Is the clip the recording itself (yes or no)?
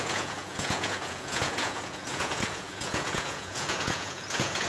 no